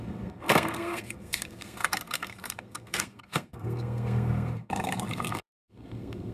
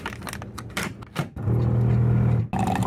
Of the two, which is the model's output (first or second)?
first